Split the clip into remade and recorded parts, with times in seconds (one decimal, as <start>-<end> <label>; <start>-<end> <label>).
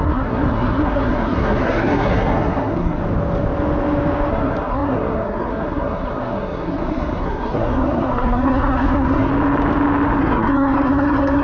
0.0-3.0 remade; 3.0-4.3 recorded; 4.3-9.3 remade; 9.3-10.2 recorded; 10.2-11.4 remade